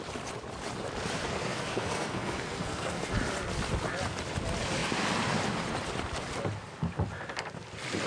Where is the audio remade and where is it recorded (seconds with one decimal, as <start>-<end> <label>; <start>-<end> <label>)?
0.0-1.2 recorded; 1.2-3.1 remade; 3.1-8.1 recorded